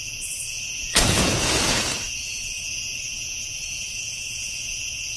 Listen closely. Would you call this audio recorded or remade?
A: remade